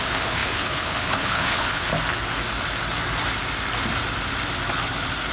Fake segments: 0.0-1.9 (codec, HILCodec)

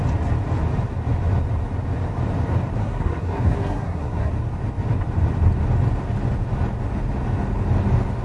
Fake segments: 2.8-4.3 (codec, SNAC)